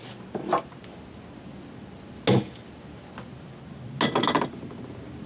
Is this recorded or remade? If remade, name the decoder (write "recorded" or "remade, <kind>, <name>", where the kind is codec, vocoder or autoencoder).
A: recorded